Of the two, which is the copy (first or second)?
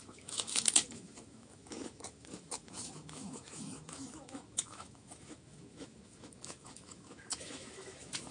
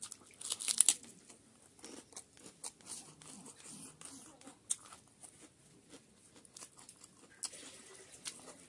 first